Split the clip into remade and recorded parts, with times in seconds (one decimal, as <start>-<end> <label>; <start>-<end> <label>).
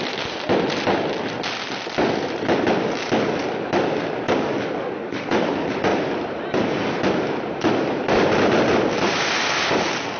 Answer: 0.0-5.9 recorded; 5.9-6.8 remade; 6.8-10.2 recorded